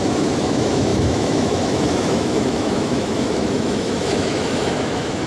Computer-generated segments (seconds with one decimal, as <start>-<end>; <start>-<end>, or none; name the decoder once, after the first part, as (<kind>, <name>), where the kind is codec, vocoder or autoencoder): 0.0-5.3 (autoencoder, DAC-VAE)